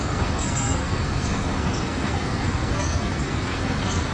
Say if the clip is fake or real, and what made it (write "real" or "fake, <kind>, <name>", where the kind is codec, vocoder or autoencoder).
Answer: fake, codec, SNAC